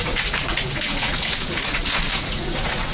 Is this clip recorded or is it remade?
remade